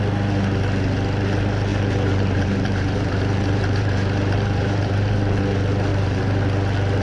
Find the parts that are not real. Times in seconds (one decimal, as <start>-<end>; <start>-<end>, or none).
1.7-5.4; 5.9-6.4

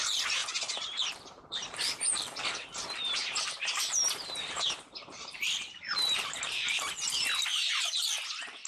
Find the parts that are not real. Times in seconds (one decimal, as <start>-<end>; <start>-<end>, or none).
0.4-2.1; 3.2-6.9; 7.5-8.1